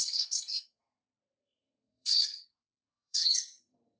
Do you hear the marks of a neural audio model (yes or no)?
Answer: yes